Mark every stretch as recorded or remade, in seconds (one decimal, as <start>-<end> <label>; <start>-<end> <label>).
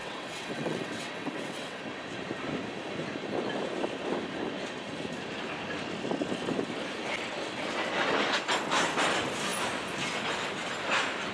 0.0-1.8 remade; 1.8-11.3 recorded